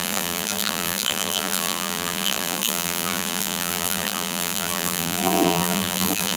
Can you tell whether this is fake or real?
fake